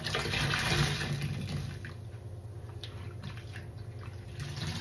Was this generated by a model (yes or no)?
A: no